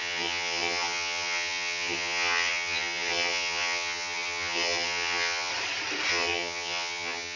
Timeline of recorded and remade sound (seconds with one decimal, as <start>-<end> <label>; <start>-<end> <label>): 0.0-5.5 remade; 5.5-6.1 recorded; 6.1-7.4 remade